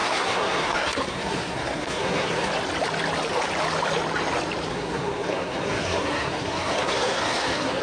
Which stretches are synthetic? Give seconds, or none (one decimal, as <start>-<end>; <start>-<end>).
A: 0.0-2.5; 4.7-7.8